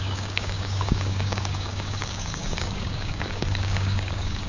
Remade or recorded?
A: remade